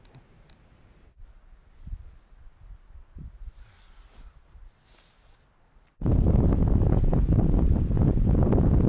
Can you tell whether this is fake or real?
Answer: real